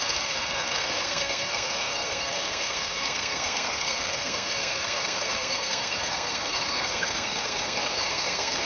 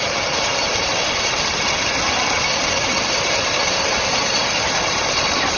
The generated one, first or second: first